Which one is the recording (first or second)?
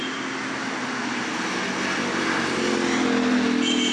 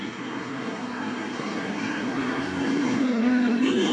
first